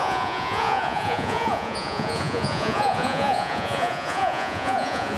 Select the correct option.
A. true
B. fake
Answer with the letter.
B